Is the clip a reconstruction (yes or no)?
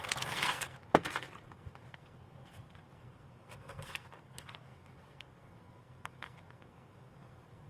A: yes